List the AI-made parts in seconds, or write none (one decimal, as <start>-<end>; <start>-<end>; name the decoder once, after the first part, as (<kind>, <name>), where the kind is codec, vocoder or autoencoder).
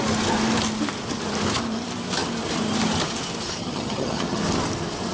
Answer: 3.6-4.4 (vocoder, HiFi-GAN)